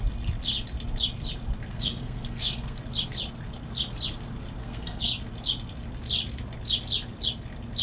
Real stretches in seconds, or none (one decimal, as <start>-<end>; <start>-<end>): 0.0-1.7; 2.8-4.6; 5.1-7.8